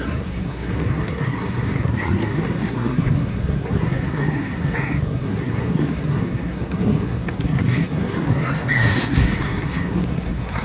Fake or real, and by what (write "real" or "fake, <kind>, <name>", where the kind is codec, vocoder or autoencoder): fake, codec, SNAC